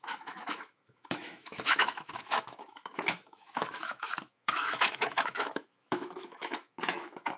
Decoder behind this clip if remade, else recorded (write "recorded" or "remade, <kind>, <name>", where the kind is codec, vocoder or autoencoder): remade, autoencoder, DAC-VAE